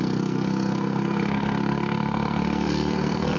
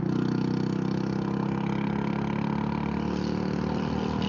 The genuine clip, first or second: second